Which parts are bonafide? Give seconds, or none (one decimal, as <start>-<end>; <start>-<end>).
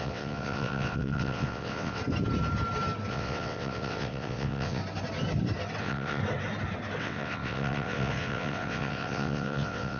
2.0-3.1; 4.8-5.8; 6.2-7.0